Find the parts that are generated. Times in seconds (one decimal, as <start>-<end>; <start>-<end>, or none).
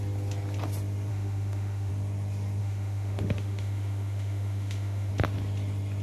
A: 1.1-1.9; 2.6-5.1